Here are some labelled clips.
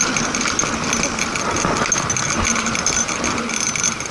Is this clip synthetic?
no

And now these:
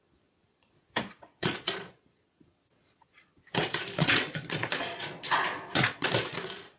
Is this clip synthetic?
yes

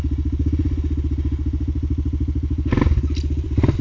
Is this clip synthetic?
no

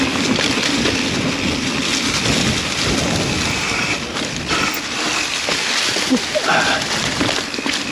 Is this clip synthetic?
no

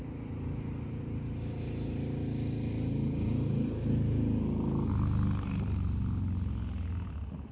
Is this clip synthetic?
no